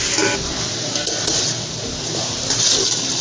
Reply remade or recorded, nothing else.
recorded